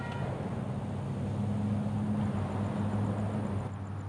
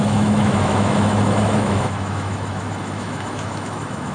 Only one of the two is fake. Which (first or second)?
second